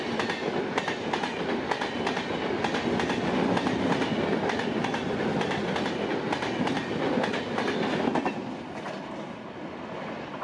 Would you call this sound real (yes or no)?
yes